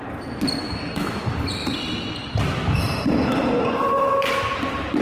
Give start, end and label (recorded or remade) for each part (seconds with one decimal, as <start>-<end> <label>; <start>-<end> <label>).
0.0-0.6 recorded; 0.6-1.2 remade; 1.2-5.0 recorded